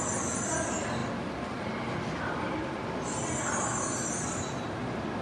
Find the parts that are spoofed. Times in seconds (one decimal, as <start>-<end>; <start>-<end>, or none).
none